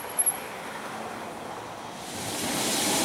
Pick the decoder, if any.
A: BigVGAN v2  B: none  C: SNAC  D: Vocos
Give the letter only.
B